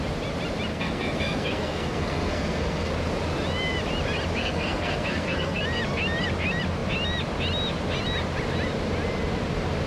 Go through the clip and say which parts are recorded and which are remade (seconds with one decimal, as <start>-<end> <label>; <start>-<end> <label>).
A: 0.0-0.7 recorded; 0.7-2.9 remade; 2.9-4.4 recorded; 4.4-5.6 remade; 5.6-9.9 recorded